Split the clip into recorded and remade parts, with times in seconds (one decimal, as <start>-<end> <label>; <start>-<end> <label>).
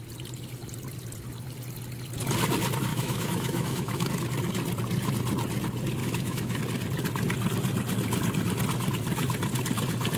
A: 0.0-2.9 recorded; 2.9-4.1 remade; 4.1-6.0 recorded; 6.0-6.6 remade; 6.6-10.2 recorded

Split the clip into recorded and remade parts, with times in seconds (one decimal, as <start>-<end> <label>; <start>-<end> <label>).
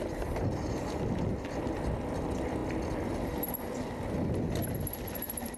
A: 0.0-5.6 recorded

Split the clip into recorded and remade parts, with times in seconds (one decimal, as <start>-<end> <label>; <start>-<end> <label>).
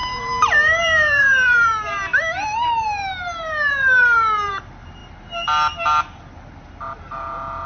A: 0.0-4.6 remade; 4.6-7.7 recorded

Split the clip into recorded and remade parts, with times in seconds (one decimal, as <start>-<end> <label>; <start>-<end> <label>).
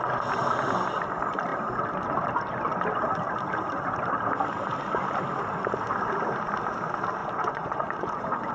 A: 0.0-7.2 recorded; 7.2-8.5 remade